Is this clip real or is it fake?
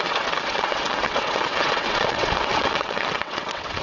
fake